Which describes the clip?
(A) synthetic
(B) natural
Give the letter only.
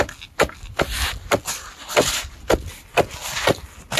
B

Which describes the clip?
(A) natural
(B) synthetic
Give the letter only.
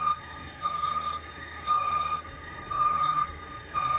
B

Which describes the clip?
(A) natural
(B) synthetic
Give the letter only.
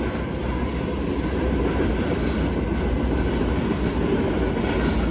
A